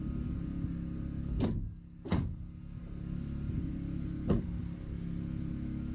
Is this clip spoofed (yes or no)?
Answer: no